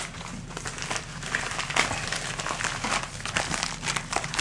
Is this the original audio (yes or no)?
yes